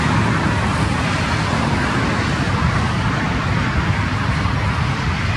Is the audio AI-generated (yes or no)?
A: no